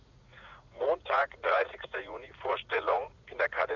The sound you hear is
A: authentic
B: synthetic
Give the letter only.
B